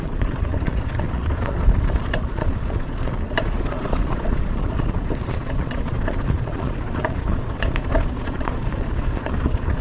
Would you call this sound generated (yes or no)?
yes